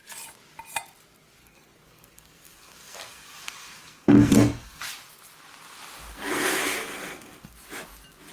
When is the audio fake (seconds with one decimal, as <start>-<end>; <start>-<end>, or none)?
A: 1.4-4.8; 6.1-7.5